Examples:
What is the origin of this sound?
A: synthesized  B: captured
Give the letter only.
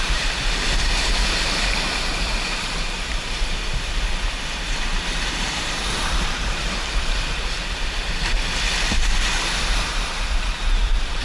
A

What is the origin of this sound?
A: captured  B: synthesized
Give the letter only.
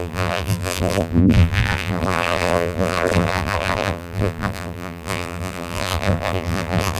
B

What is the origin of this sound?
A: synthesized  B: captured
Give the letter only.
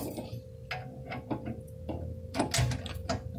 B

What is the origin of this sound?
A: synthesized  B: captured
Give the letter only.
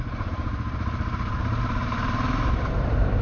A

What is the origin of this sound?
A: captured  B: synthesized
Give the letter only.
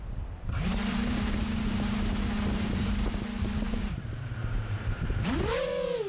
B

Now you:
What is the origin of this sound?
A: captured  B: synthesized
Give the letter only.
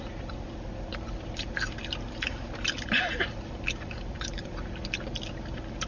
B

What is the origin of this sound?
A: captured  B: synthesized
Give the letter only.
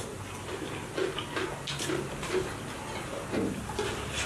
A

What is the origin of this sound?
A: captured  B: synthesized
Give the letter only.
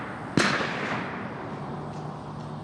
A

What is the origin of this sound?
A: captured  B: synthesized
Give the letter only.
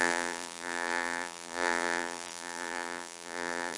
B